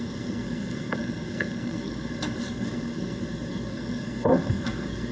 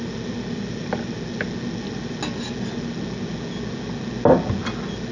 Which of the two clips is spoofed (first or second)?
first